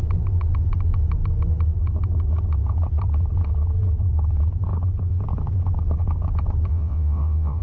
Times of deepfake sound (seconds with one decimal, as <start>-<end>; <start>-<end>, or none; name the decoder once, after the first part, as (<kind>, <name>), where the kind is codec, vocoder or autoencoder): 6.7-7.6 (vocoder, WaveNeXt)